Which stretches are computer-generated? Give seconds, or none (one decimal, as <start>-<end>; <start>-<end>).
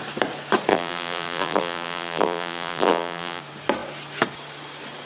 0.7-3.4